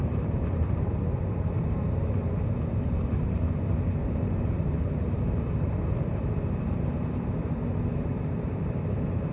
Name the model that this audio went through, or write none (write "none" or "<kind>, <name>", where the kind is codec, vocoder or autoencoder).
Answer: vocoder, BigVGAN v2